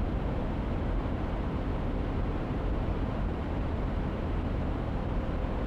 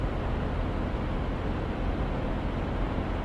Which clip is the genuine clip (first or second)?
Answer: second